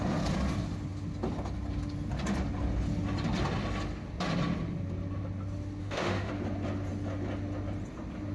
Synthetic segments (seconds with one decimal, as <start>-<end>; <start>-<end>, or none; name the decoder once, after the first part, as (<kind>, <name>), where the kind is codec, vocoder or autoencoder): 5.8-6.3 (autoencoder, DAC-VAE)

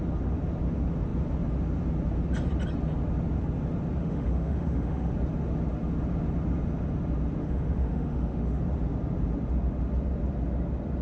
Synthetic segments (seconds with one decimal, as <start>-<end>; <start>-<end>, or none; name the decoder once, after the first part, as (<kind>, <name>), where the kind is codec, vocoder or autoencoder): 4.0-5.1 (autoencoder, DAC-VAE); 7.4-8.6